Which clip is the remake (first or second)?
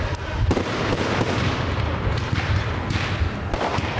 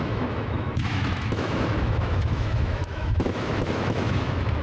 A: second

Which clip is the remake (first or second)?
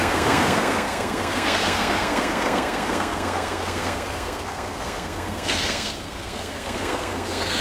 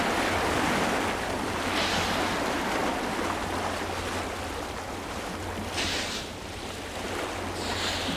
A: first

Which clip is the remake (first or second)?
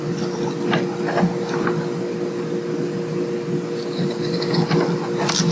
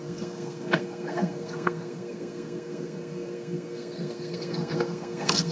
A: second